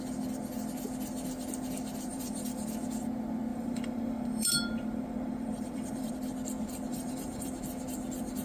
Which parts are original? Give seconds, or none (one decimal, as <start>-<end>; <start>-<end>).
0.0-2.1; 2.7-3.5; 6.1-6.9; 7.5-8.4